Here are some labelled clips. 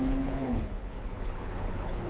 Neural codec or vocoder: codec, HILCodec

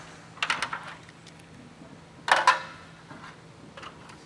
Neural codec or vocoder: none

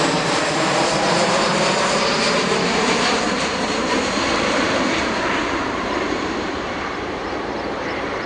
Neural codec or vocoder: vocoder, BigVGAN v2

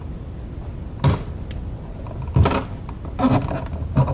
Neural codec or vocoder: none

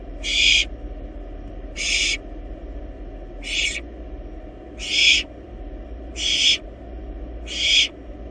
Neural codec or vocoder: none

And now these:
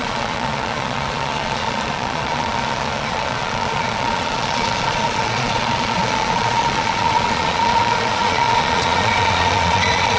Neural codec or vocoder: vocoder, Vocos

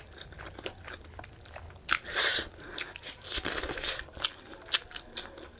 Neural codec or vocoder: none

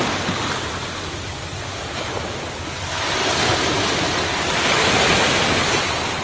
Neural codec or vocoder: none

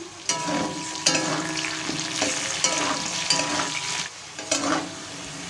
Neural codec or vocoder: none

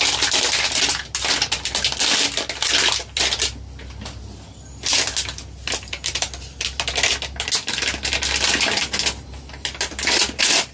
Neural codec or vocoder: none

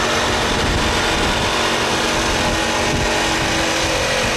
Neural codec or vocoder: none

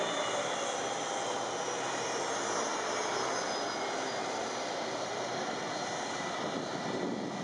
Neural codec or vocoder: none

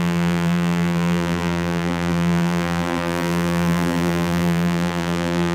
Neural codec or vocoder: vocoder, BigVGAN v2